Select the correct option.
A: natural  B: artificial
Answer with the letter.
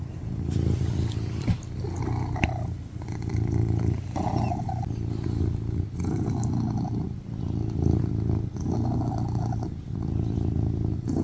A